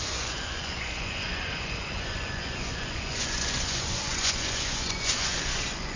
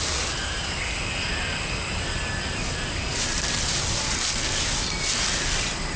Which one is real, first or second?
second